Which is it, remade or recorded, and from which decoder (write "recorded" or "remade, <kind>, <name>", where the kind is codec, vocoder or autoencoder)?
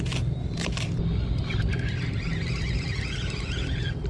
recorded